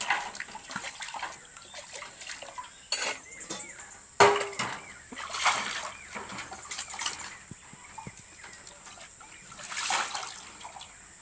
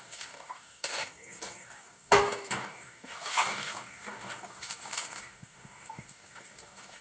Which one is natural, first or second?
first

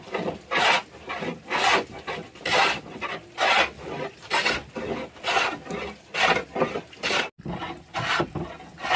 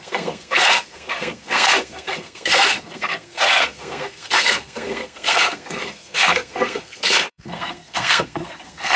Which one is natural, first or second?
first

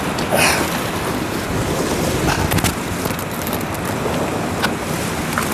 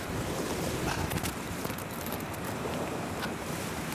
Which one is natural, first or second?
first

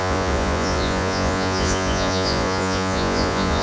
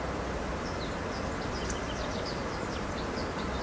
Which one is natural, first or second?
second